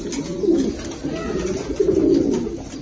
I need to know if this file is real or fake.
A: real